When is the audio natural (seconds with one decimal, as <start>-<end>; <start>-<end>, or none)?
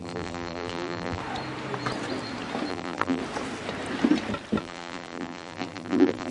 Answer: 1.2-2.7; 3.2-4.6